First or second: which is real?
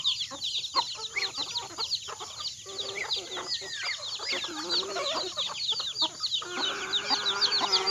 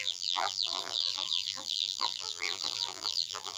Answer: first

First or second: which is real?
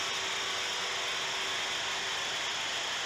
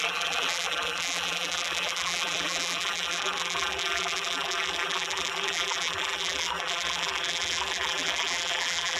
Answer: first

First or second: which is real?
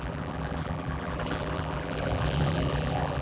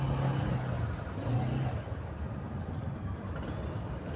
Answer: second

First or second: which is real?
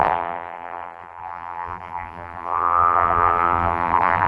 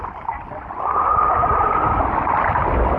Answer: second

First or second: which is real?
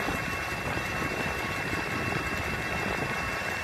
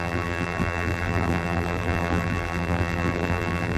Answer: first